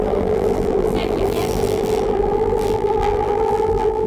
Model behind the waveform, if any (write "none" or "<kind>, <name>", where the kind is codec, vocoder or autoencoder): vocoder, BigVGAN v2